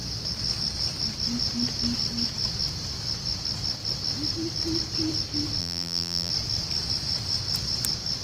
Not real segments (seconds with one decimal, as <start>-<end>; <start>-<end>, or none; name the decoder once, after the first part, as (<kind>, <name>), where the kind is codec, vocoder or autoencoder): 5.6-6.3 (vocoder, BigVGAN v2)